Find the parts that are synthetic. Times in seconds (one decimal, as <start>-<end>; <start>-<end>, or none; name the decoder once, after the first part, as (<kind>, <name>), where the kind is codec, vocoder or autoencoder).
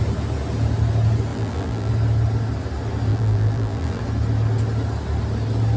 1.3-1.9 (vocoder, BigVGAN v2); 3.1-4.0